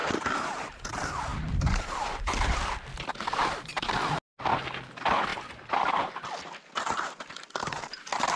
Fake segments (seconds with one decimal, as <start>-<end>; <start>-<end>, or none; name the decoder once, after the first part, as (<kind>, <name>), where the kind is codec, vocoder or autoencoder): 0.0-0.5 (vocoder, BigVGAN v2); 1.3-3.8; 5.3-8.4